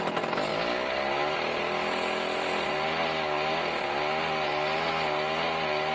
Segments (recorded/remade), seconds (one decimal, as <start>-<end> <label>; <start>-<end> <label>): 0.0-5.9 recorded